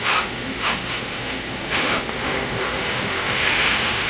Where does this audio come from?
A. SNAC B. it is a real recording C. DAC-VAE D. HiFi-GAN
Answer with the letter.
C